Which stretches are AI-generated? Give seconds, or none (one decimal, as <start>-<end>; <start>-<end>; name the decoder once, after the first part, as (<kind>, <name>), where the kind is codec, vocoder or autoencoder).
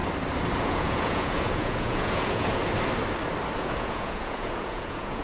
0.6-2.6 (vocoder, Vocos); 3.6-5.2